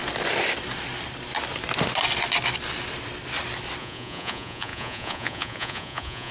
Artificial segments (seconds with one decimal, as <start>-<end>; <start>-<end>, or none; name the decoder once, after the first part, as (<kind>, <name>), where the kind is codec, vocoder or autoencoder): 3.8-6.3 (vocoder, Vocos)